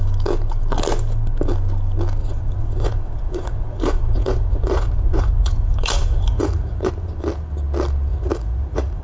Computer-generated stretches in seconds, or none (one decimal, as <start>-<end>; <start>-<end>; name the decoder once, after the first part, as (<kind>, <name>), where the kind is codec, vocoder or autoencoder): 2.2-6.9 (vocoder, Vocos); 8.1-9.0